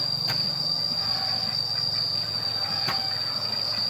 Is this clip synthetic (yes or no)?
no